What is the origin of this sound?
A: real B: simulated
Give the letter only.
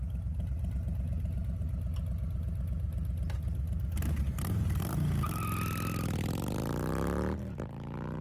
A